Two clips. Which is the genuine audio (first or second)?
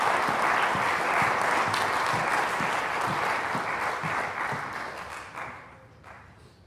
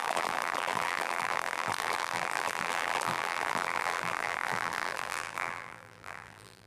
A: first